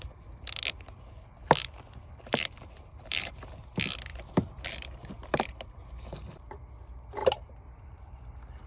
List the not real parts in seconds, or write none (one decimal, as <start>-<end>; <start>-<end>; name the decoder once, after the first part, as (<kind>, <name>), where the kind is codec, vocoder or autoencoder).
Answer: 2.0-3.4 (vocoder, BigVGAN v2); 4.1-6.5; 7.2-8.2